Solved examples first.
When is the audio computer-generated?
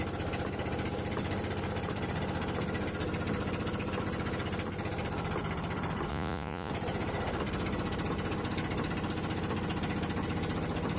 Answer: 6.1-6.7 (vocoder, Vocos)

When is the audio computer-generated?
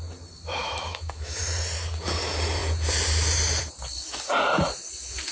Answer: 0.6-1.4 (autoencoder, DAC-VAE)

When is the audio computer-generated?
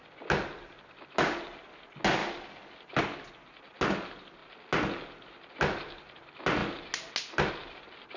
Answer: none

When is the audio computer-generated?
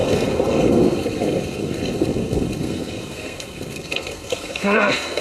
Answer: 0.0-5.2 (codec, SNAC)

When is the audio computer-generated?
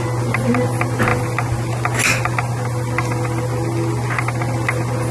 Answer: none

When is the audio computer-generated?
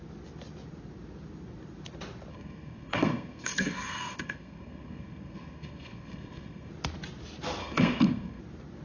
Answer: 2.3-6.7 (codec, SNAC); 7.6-8.4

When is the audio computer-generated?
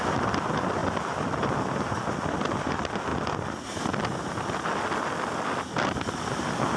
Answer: none